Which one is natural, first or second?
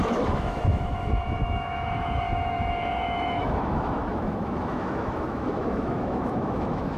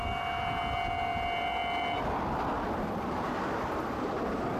second